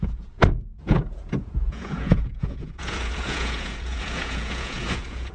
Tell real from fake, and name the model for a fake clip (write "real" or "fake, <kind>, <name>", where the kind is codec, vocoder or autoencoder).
fake, vocoder, Vocos